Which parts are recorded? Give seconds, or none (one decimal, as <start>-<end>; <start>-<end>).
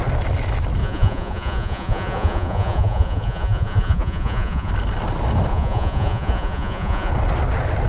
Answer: 0.0-0.8; 4.7-5.5; 7.1-7.9